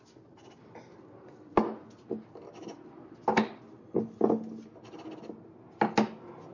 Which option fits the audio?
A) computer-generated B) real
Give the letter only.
B